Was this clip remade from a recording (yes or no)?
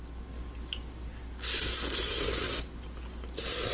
no